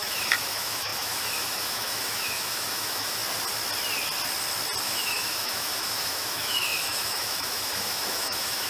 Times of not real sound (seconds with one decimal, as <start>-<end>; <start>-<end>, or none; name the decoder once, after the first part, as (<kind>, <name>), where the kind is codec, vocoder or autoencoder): 0.0-3.2 (autoencoder, DAC-VAE); 4.8-8.7